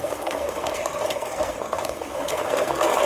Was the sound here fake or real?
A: fake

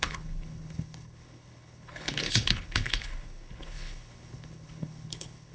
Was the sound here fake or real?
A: fake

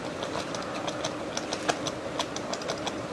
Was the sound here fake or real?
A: real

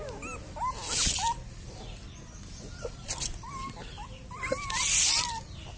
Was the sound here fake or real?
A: real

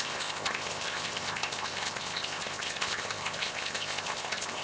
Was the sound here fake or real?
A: fake